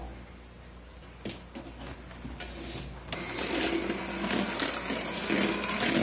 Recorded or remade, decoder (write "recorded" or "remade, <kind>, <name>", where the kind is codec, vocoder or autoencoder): recorded